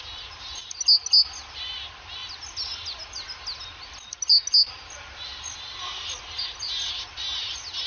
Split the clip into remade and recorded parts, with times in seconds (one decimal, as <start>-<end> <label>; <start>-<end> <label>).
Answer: 0.0-7.9 recorded